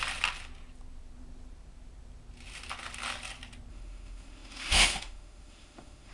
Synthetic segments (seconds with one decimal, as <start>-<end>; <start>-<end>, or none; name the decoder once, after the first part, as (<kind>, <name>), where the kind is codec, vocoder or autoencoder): 3.7-6.1 (autoencoder, DAC-VAE)